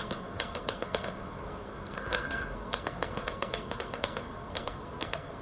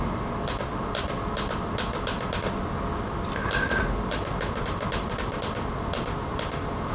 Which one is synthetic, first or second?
first